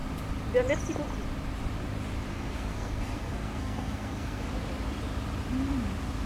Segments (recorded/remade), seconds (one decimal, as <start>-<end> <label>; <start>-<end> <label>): 0.0-2.3 recorded; 2.3-4.5 remade; 4.5-6.3 recorded